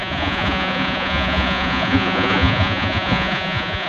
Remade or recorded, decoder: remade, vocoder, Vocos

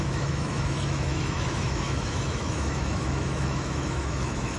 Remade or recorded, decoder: remade, autoencoder, DAC-VAE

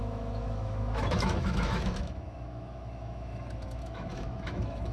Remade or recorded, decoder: remade, autoencoder, DAC-VAE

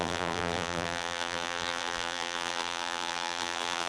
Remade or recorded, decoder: remade, vocoder, BigVGAN v2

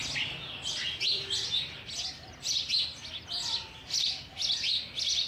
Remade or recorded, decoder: recorded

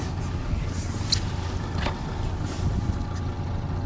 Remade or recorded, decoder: recorded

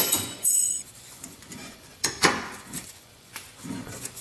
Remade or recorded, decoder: remade, vocoder, Vocos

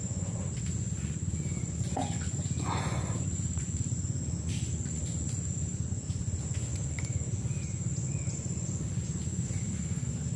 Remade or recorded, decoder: remade, vocoder, Vocos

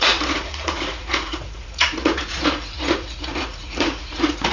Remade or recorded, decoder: remade, vocoder, Vocos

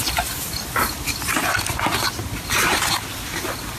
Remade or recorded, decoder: recorded